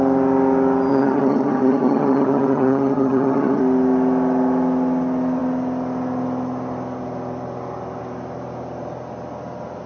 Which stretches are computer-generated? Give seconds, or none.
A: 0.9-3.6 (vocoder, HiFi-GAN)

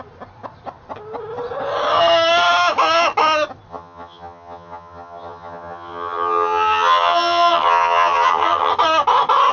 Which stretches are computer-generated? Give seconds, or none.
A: 3.7-8.7 (vocoder, HiFi-GAN)

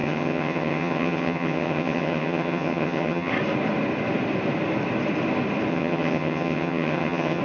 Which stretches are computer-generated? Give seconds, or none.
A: 0.0-3.3 (vocoder, HiFi-GAN); 5.7-7.4

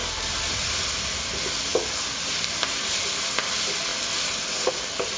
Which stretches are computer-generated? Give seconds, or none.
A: none

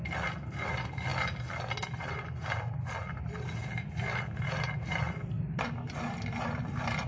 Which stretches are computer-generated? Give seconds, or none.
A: none

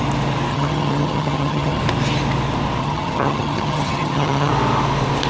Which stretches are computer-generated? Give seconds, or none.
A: 0.5-1.8 (vocoder, HiFi-GAN); 2.8-4.5